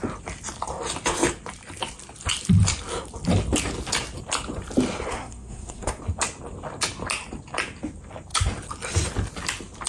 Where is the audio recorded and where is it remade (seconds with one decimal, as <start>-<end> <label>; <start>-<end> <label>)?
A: 0.0-5.1 recorded; 5.1-6.0 remade; 6.0-9.9 recorded